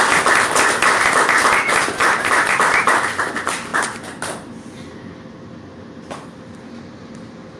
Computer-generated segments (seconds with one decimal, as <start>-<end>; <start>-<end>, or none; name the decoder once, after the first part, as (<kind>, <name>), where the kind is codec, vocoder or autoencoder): 2.0-2.8 (vocoder, BigVGAN v2); 3.7-6.7